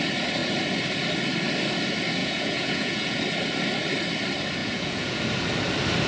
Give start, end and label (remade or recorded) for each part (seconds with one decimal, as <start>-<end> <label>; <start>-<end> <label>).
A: 0.0-2.2 recorded; 2.2-3.2 remade; 3.2-4.6 recorded; 4.6-5.2 remade; 5.2-6.1 recorded